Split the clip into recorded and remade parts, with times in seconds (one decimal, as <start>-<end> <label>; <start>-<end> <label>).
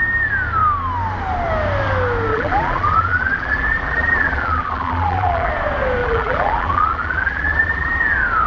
0.0-2.3 recorded; 2.3-5.5 remade; 5.5-6.0 recorded; 6.0-7.9 remade; 7.9-8.5 recorded